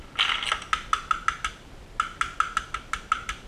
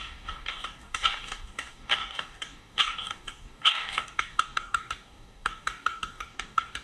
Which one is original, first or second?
first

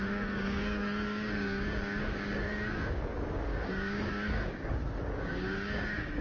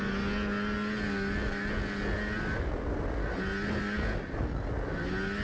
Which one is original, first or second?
second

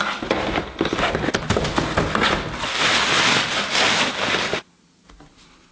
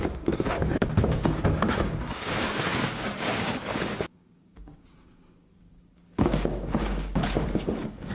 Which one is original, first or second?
first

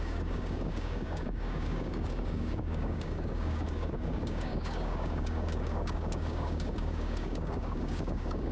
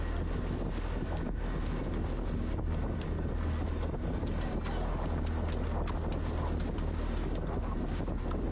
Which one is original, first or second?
second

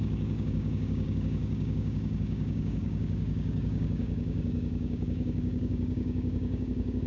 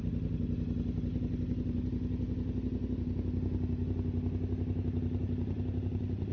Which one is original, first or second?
second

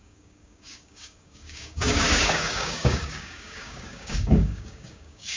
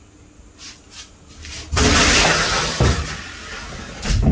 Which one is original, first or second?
second